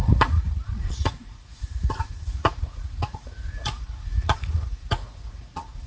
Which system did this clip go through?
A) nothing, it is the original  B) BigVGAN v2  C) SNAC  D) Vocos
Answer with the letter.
D